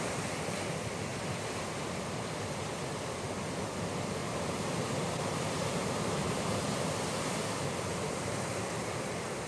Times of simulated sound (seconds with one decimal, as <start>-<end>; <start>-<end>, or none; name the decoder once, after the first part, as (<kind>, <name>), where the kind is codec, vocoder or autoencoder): 4.2-6.4 (vocoder, BigVGAN v2)

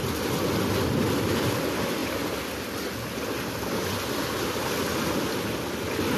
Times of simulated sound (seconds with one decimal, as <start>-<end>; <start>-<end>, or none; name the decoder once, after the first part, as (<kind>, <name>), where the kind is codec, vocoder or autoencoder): none

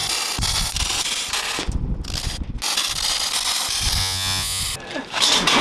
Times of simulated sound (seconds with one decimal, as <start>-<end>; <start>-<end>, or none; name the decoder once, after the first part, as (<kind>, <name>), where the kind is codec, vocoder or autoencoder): 4.0-4.6 (vocoder, Vocos)

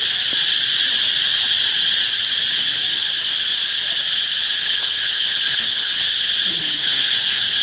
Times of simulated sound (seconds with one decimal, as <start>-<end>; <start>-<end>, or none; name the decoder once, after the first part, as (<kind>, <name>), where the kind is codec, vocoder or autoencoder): 4.6-5.9 (codec, HILCodec); 6.5-7.6

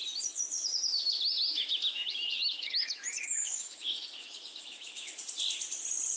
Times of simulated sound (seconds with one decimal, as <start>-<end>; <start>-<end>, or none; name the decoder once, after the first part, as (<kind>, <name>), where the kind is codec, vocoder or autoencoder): 0.0-1.0 (autoencoder, DAC-VAE); 1.5-5.2